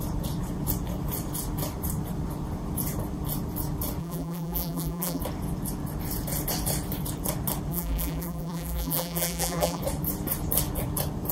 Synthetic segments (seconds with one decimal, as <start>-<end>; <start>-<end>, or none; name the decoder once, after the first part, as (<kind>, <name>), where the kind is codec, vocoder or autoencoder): 4.0-5.2 (vocoder, BigVGAN v2); 7.7-9.8